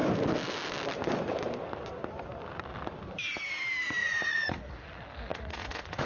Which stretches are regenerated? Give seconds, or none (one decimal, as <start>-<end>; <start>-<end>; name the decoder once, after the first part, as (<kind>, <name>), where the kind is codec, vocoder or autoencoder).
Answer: 4.0-4.6 (vocoder, Vocos); 5.3-6.1